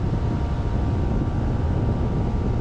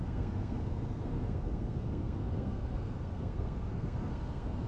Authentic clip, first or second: first